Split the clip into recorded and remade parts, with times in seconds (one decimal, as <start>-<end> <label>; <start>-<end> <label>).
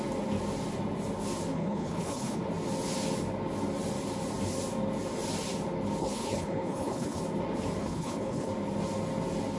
0.0-1.5 recorded; 1.5-2.4 remade; 2.4-6.0 recorded; 6.0-7.2 remade; 7.2-7.8 recorded; 7.8-8.5 remade; 8.5-9.6 recorded